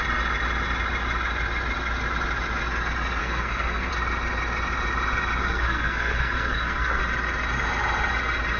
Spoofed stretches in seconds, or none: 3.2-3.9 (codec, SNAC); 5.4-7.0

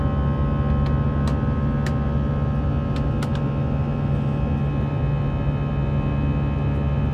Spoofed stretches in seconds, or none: none

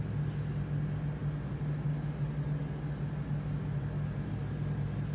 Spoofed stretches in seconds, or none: none

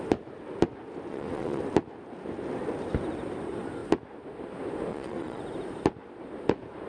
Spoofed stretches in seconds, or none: 1.1-1.6 (vocoder, Vocos); 4.9-5.4

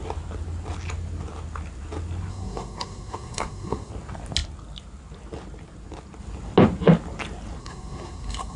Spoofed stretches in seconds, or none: 2.3-3.9 (codec, SNAC); 7.6-8.6

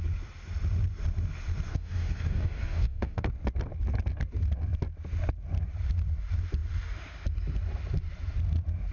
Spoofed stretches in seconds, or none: 1.7-3.3 (codec, DAC)

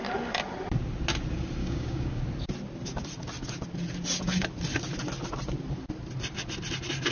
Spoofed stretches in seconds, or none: 1.6-2.2 (codec, DAC)

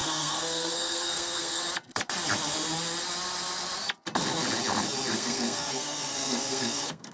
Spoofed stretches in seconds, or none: 0.0-1.6 (codec, SNAC); 5.1-7.1